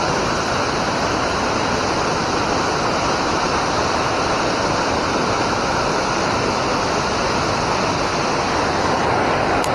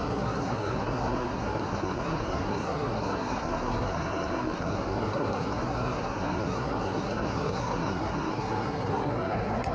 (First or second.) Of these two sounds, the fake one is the second